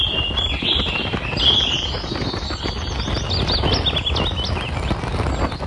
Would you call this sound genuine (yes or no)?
yes